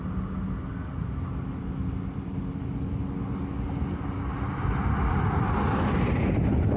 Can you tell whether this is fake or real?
real